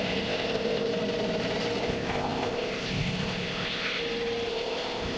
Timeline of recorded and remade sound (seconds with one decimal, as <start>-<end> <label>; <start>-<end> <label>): 0.0-0.9 remade; 0.9-1.8 recorded; 1.8-4.0 remade; 4.0-4.5 recorded; 4.5-5.2 remade